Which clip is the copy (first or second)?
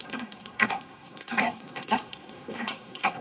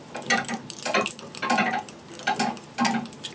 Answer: first